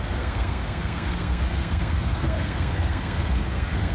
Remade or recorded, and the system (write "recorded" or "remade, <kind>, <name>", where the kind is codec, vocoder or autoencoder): remade, codec, SNAC